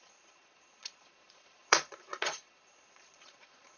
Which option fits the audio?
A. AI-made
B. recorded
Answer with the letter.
A